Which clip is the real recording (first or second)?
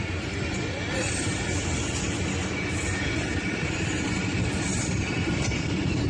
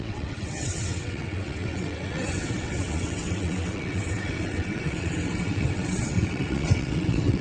first